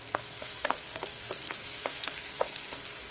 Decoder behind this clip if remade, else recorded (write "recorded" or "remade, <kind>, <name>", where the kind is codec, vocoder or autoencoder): remade, codec, SNAC